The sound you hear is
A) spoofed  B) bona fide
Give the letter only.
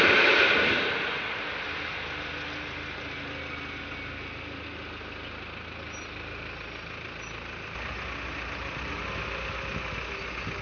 B